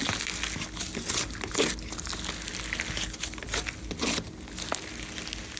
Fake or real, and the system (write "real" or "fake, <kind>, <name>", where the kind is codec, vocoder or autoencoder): real